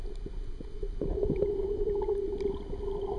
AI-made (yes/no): no